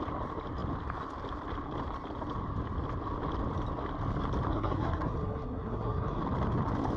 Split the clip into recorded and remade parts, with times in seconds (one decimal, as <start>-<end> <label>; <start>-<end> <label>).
0.0-4.5 recorded; 4.5-6.2 remade; 6.2-7.0 recorded